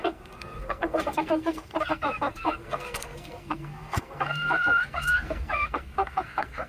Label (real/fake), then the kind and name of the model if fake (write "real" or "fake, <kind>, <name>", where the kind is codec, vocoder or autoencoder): fake, codec, SNAC